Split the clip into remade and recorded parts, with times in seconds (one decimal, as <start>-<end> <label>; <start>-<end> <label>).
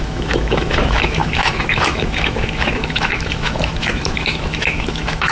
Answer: 0.0-5.3 remade